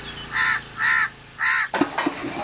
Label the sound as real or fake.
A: real